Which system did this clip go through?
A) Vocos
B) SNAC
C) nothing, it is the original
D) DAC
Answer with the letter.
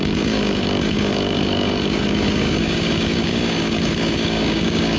D